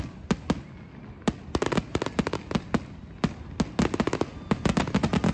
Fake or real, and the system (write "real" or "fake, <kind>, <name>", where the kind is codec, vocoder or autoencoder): real